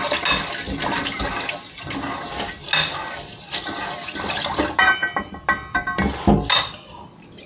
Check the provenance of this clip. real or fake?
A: real